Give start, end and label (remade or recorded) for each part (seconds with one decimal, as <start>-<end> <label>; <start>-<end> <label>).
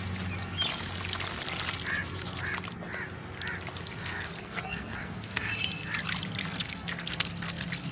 0.0-4.0 recorded; 4.0-5.5 remade; 5.5-6.4 recorded; 6.4-7.9 remade